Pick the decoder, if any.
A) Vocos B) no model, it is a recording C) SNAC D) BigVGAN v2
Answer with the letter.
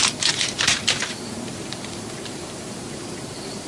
D